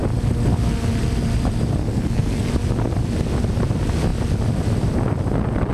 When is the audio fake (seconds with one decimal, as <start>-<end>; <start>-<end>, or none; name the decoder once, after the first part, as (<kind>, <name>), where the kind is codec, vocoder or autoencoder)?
1.8-2.5 (codec, SNAC)